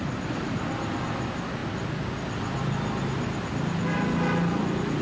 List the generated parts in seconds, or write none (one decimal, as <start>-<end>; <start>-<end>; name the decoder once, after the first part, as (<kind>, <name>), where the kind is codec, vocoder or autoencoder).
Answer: none